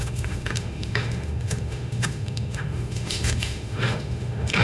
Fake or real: fake